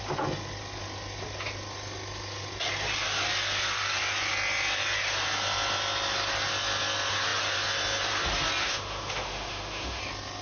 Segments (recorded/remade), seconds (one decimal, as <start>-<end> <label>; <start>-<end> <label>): 0.0-8.6 recorded; 8.6-10.0 remade; 10.0-10.4 recorded